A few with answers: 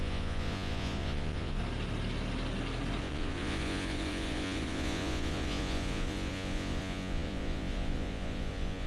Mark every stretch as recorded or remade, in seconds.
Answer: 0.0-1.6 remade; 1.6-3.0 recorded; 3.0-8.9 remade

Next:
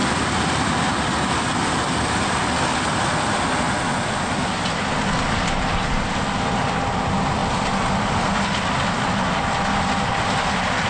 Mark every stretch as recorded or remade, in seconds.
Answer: 0.0-10.9 recorded

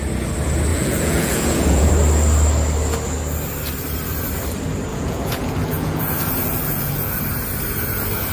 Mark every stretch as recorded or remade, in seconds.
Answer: 0.0-0.7 recorded; 0.7-1.9 remade; 1.9-4.9 recorded; 4.9-7.2 remade; 7.2-8.3 recorded

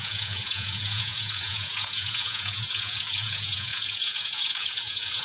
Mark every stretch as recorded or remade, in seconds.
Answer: 0.0-5.2 remade

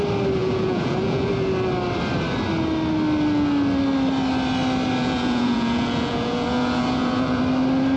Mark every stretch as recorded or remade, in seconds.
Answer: 0.0-0.4 recorded; 0.4-1.3 remade; 1.3-5.0 recorded; 5.0-7.4 remade; 7.4-8.0 recorded

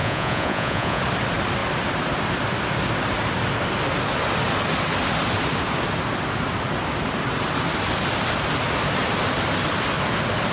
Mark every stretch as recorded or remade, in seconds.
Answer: 0.0-1.0 remade; 1.0-10.5 recorded

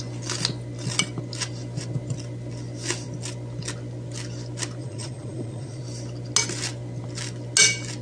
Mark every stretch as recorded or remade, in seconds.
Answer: 0.0-4.8 recorded; 4.8-5.8 remade; 5.8-8.0 recorded